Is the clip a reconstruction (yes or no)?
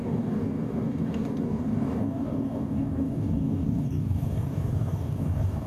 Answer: yes